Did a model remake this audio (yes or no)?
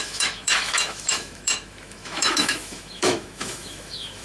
yes